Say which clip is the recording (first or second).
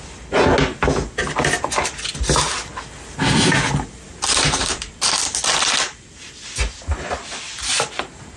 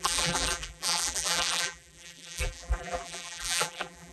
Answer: first